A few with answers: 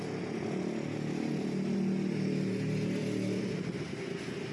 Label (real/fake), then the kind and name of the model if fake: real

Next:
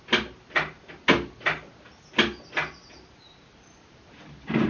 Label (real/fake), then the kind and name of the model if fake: real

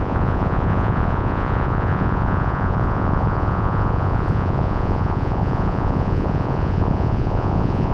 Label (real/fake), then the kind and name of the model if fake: fake, vocoder, Vocos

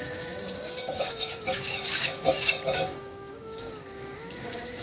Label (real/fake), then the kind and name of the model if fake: fake, codec, DAC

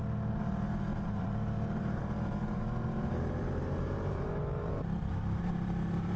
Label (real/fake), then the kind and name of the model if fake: fake, vocoder, BigVGAN v2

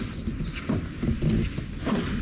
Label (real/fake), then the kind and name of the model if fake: real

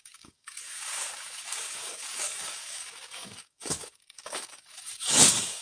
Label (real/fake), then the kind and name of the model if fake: fake, codec, DAC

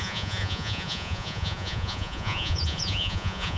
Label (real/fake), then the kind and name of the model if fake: fake, vocoder, Vocos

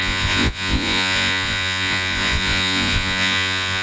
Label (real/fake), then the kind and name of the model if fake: fake, vocoder, Vocos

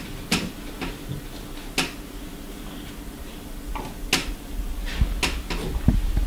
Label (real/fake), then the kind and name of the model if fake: real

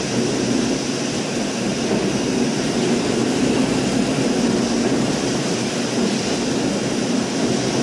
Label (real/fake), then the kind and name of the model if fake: real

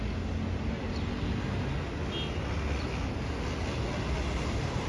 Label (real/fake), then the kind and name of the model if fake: real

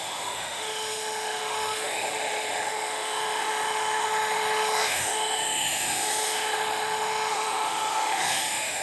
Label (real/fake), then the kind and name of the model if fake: fake, autoencoder, DAC-VAE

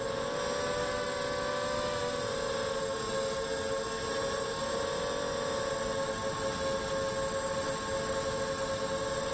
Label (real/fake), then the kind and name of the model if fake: real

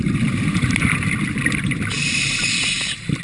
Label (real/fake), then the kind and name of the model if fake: real